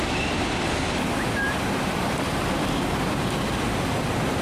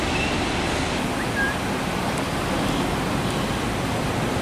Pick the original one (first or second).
second